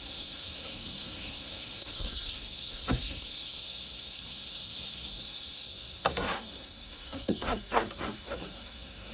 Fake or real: fake